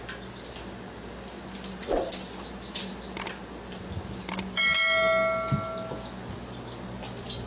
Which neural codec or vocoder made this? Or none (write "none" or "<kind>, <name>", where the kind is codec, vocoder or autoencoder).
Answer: none